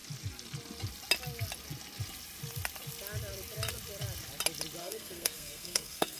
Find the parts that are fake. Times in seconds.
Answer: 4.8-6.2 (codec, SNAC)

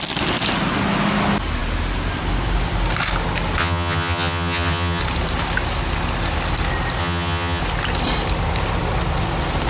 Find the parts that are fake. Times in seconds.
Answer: 3.6-5.0 (vocoder, HiFi-GAN); 7.0-7.6

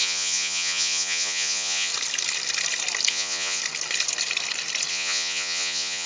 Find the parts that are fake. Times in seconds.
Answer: 0.0-1.9 (vocoder, Vocos); 3.1-3.6; 4.9-6.1

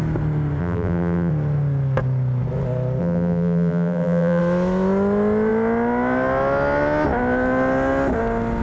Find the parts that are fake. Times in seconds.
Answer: 0.6-1.3 (vocoder, BigVGAN v2); 3.0-4.4

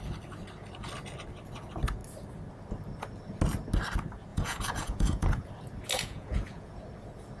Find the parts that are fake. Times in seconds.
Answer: 4.3-5.5 (vocoder, Vocos); 5.9-6.8

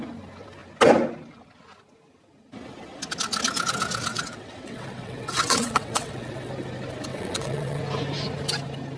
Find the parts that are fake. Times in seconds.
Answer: 4.1-6.5 (vocoder, WaveNeXt); 7.1-7.8